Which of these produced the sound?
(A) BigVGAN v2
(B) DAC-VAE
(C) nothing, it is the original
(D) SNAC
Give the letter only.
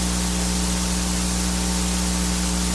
C